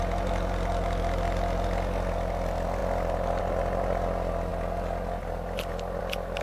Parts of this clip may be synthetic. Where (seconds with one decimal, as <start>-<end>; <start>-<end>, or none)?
none